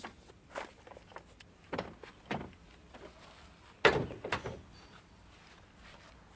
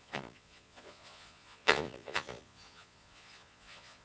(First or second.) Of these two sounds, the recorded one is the first